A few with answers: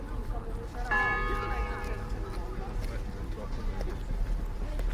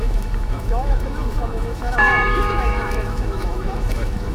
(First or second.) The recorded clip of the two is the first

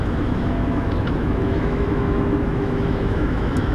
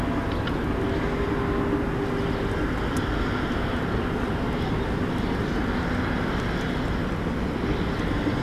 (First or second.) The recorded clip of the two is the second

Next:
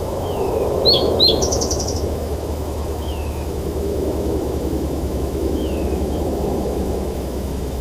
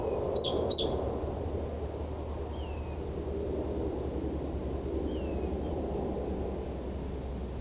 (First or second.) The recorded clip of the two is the second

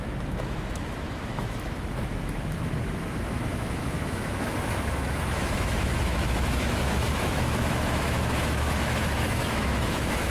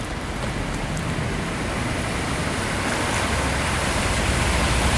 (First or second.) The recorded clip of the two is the second